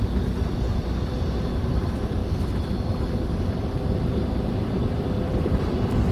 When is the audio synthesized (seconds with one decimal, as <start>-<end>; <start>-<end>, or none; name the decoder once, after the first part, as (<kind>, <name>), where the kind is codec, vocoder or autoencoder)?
0.0-2.2 (vocoder, BigVGAN v2); 4.1-6.1